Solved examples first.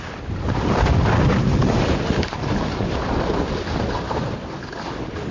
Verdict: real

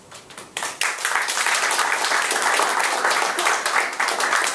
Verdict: real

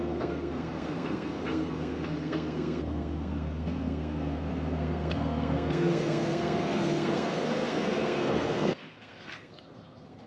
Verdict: fake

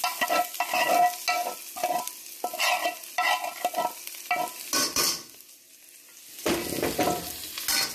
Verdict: real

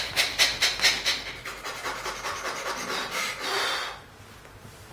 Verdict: real